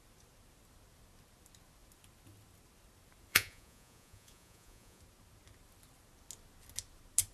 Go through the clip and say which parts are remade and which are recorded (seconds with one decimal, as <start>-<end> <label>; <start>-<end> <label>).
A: 0.0-3.3 recorded; 3.3-5.0 remade; 5.0-7.3 recorded